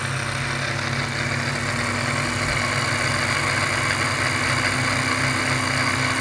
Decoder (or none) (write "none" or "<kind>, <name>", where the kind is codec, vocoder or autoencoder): none